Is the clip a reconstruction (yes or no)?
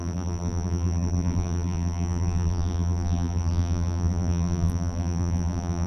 yes